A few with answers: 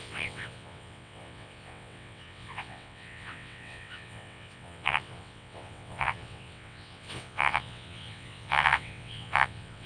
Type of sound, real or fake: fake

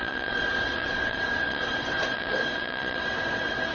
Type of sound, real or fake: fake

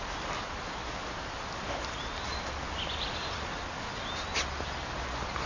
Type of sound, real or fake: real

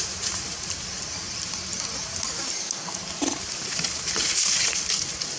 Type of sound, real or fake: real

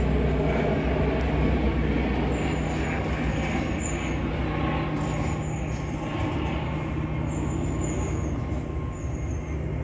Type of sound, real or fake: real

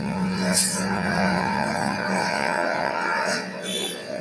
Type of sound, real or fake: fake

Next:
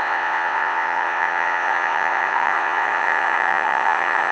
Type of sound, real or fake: fake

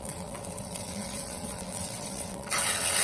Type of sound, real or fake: fake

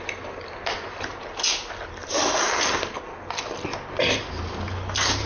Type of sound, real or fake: real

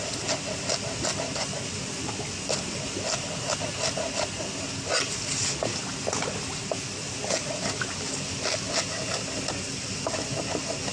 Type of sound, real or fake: real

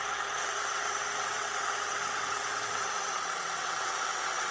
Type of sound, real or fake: fake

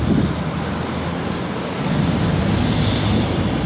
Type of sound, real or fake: real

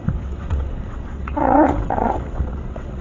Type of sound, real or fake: fake